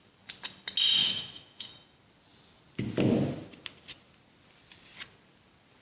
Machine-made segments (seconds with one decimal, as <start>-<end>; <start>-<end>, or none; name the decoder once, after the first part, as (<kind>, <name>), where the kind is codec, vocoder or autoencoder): 1.0-1.7 (autoencoder, DAC-VAE)